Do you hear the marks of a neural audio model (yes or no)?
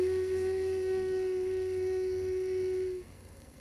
yes